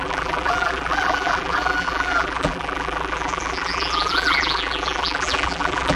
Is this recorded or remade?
remade